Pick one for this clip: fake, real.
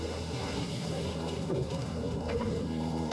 fake